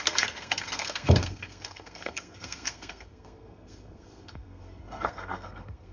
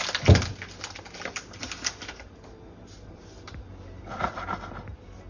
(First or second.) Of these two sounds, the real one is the second